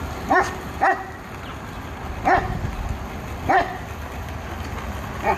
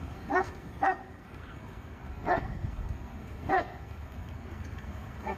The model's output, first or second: second